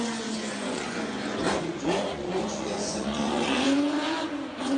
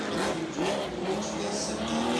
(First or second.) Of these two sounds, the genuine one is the second